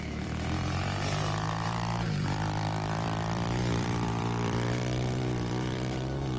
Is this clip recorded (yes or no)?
no